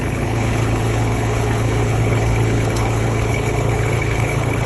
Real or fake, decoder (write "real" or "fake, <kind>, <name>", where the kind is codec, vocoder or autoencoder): fake, codec, HILCodec